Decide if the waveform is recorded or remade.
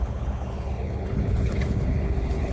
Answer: remade